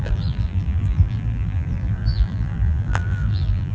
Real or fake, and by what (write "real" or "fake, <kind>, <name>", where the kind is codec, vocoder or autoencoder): fake, vocoder, BigVGAN v2